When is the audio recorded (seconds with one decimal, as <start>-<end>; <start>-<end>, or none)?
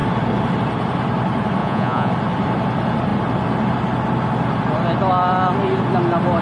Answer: 0.0-1.6; 2.1-6.4